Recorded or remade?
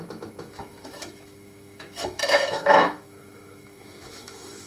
remade